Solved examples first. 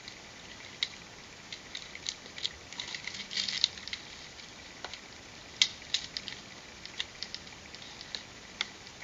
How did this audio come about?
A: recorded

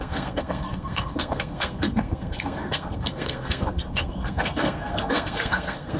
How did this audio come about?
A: remade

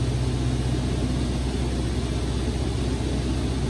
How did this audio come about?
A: recorded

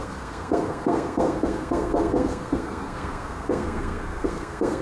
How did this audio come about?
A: remade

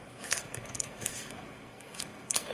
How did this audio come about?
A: remade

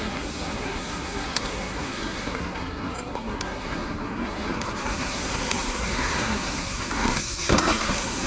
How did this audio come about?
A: remade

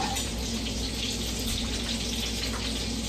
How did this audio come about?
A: recorded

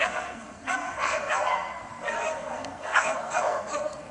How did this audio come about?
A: remade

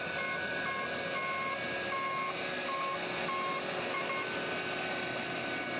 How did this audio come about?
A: recorded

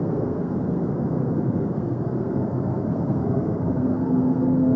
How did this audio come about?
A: remade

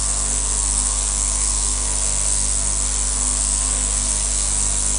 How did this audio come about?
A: remade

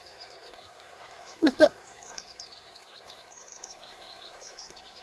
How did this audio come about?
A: remade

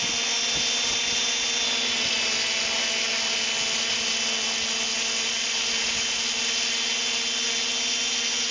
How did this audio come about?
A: recorded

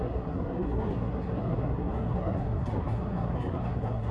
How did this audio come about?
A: remade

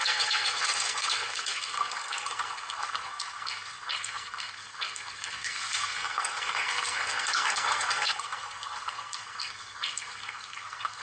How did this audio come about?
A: remade